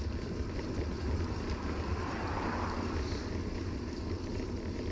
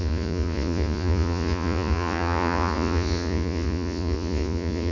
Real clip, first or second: first